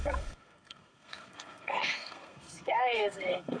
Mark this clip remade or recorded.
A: remade